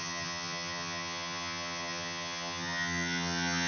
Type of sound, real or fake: fake